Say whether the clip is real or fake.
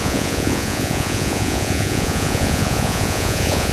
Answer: fake